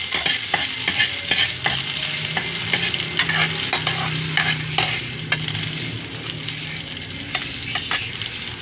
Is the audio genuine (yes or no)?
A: yes